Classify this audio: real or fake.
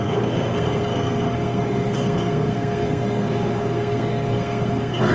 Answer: fake